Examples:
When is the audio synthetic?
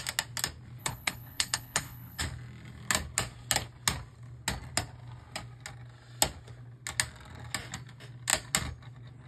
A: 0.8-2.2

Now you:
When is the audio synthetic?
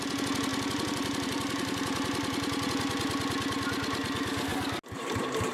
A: 0.5-2.7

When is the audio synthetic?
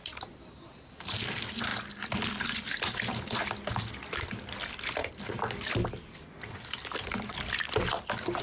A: none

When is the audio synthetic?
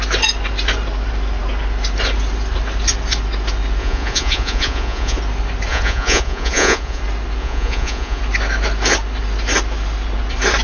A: 3.8-5.2; 5.7-7.0; 7.4-8.2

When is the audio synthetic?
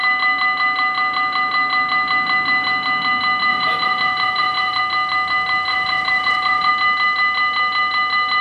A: 3.5-4.8; 5.7-6.7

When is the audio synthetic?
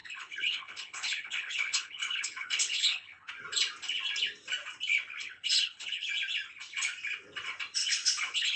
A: 0.0-3.3; 5.2-6.1; 7.8-8.6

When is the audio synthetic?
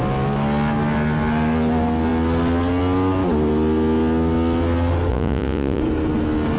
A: 5.1-5.8